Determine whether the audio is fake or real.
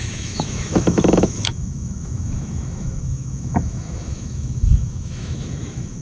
fake